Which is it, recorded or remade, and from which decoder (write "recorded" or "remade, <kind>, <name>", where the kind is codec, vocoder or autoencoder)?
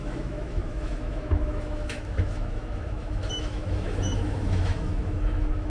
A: remade, autoencoder, DAC-VAE